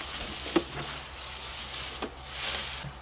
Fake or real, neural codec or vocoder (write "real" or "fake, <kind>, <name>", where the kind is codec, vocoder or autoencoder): real